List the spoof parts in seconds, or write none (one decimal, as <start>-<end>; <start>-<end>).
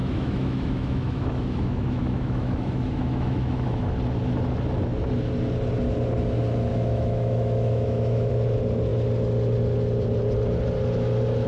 0.0-3.9; 6.7-8.3